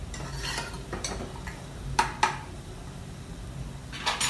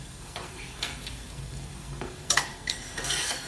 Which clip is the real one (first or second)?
first